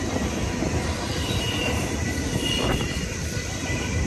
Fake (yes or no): yes